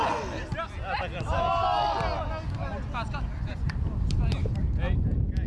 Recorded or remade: recorded